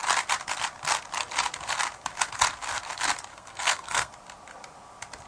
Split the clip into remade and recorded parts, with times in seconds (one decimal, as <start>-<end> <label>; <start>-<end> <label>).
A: 0.0-3.3 recorded; 3.3-4.1 remade; 4.1-5.3 recorded